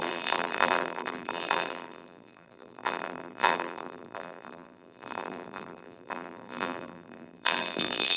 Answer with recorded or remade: remade